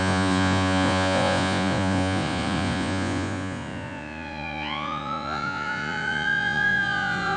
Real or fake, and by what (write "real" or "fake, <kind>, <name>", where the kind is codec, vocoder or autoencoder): fake, vocoder, Vocos